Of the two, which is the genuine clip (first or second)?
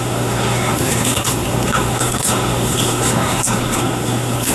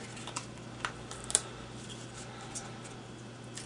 second